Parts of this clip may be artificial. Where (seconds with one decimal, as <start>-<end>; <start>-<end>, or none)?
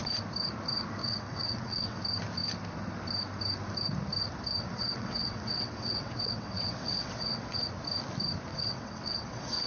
1.0-2.0; 4.6-7.6; 8.5-9.7